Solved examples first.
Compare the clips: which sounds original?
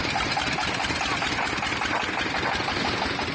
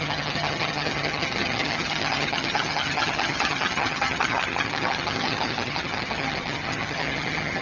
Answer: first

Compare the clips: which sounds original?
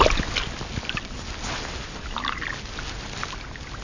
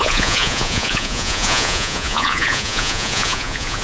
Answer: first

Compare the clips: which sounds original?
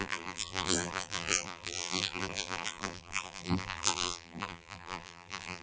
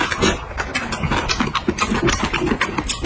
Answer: second